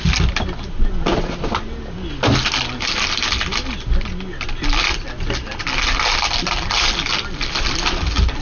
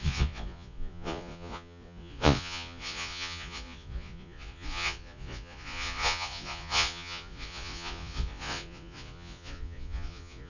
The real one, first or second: first